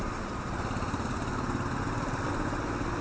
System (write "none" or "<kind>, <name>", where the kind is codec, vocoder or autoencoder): none